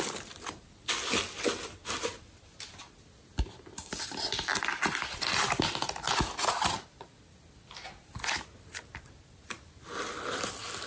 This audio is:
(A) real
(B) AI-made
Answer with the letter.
A